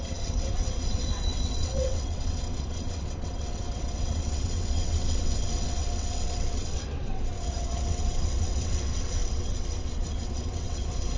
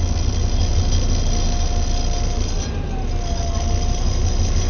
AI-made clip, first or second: first